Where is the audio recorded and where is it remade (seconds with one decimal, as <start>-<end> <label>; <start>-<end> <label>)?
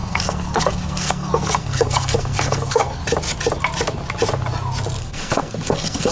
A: 0.0-3.0 remade; 3.0-5.0 recorded; 5.0-6.1 remade